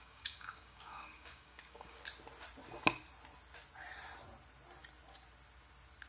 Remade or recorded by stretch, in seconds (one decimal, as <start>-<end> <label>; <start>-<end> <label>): 0.0-2.0 remade; 2.0-6.1 recorded